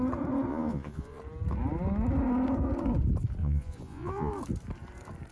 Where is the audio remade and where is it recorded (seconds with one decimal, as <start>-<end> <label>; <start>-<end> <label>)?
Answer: 0.0-0.5 recorded; 0.5-1.2 remade; 1.2-3.4 recorded; 3.4-4.3 remade; 4.3-5.3 recorded